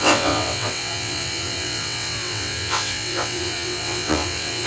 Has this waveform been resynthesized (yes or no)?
yes